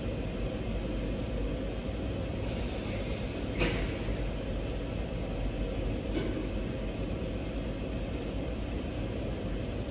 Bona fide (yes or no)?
yes